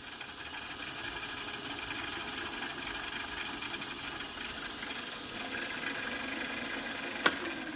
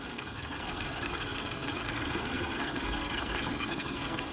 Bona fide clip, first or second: first